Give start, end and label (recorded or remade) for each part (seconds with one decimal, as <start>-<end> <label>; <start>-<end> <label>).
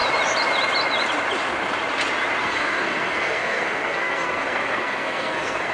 0.0-2.4 recorded; 2.4-5.7 remade